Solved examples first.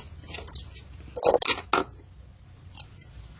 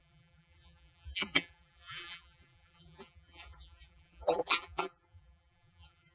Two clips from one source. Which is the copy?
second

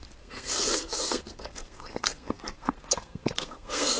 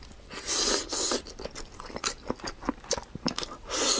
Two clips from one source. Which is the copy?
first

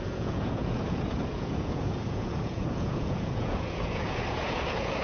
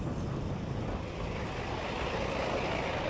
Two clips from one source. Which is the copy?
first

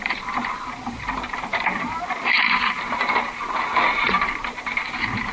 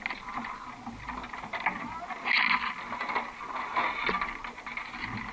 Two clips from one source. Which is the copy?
first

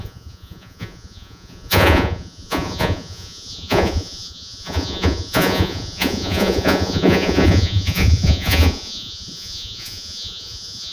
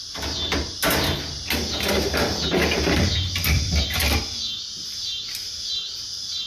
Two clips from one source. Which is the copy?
first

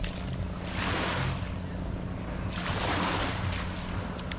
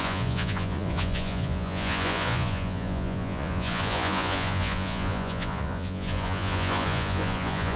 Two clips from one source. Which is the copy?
second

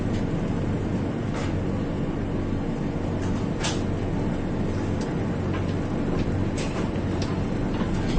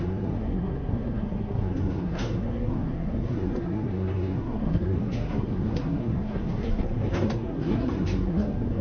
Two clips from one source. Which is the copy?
second